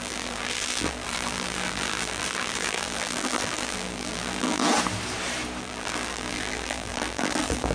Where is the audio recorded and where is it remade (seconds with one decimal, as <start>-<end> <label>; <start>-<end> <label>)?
0.0-4.6 remade; 4.6-5.6 recorded; 5.6-7.7 remade